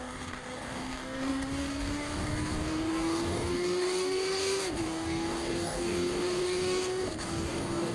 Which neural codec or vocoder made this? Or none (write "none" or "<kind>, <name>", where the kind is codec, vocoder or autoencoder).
codec, DAC